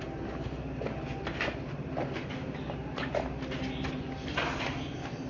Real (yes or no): yes